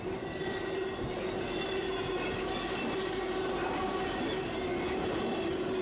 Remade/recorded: recorded